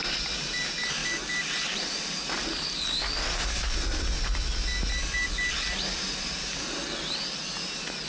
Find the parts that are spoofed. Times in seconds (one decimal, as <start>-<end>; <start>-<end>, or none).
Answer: none

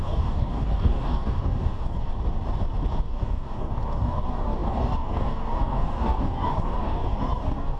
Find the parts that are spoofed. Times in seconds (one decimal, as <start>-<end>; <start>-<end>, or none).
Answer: 0.0-2.1; 3.0-7.8

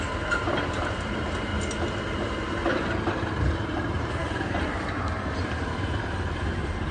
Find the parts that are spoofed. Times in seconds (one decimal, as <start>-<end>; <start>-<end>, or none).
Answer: 0.0-1.5; 2.1-6.9

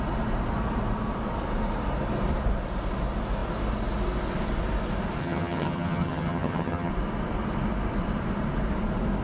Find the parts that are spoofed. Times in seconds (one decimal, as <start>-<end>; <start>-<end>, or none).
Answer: 5.2-6.9

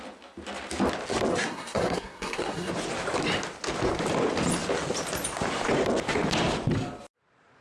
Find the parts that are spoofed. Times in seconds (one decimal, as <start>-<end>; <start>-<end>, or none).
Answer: 1.3-2.7

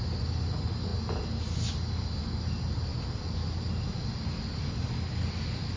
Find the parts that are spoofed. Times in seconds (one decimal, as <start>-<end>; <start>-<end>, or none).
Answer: none

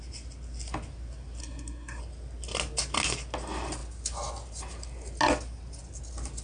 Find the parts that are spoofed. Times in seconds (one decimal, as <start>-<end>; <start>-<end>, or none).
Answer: 1.4-2.0